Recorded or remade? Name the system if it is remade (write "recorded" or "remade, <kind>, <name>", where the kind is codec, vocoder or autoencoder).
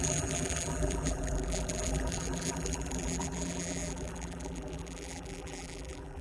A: remade, vocoder, BigVGAN v2